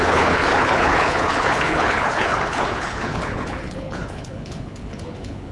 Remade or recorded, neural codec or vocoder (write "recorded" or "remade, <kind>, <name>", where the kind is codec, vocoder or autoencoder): remade, codec, HILCodec